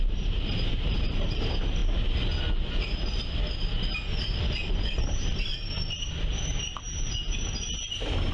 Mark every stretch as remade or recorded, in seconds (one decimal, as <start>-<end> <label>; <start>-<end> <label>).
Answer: 0.0-1.8 remade; 1.8-4.7 recorded; 4.7-5.5 remade; 5.5-6.1 recorded; 6.1-6.8 remade; 6.8-7.9 recorded; 7.9-8.3 remade

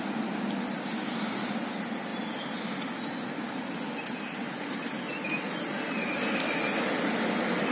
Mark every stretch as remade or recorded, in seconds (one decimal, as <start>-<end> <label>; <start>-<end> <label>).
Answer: 0.0-7.7 recorded